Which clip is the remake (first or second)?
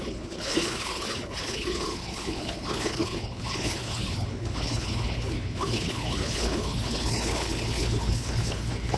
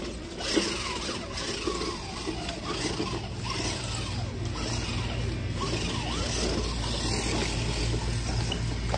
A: first